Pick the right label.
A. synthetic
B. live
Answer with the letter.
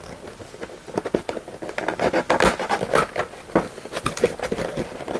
B